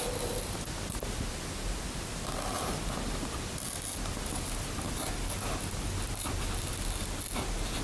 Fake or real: real